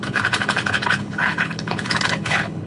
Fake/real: fake